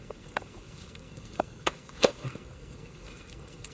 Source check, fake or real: fake